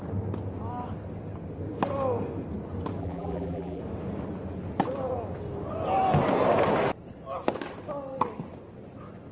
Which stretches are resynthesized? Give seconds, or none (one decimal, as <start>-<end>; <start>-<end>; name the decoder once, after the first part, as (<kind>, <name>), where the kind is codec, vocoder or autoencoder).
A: 3.0-3.8 (vocoder, BigVGAN v2)